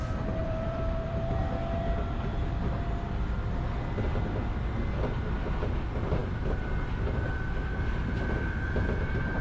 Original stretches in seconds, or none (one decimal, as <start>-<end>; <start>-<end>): 0.0-0.4; 1.4-6.2; 7.6-9.4